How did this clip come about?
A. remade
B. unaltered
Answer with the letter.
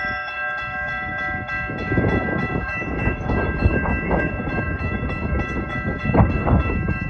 A